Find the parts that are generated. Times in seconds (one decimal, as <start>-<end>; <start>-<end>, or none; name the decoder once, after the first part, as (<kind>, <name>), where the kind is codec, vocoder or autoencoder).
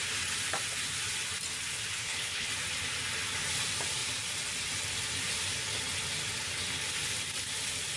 1.9-2.5 (codec, HILCodec)